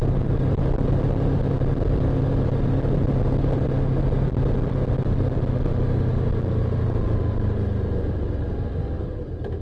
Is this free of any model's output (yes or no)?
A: yes